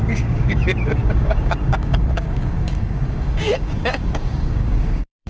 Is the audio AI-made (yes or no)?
yes